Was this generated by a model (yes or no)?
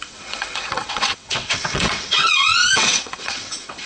yes